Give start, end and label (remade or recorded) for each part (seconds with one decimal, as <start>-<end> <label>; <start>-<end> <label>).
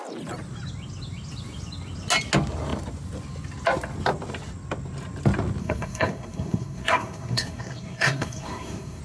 0.0-5.6 recorded; 5.6-9.0 remade